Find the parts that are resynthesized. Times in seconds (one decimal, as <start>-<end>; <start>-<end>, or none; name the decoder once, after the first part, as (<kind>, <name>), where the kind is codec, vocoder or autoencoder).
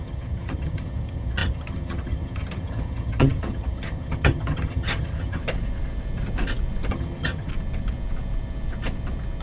0.0-5.4 (vocoder, HiFi-GAN); 6.9-7.5